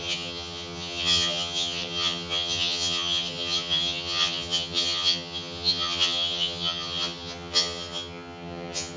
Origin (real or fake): fake